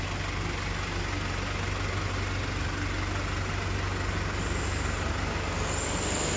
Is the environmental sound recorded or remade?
recorded